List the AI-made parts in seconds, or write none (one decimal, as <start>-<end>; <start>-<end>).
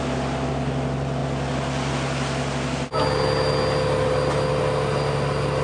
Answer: none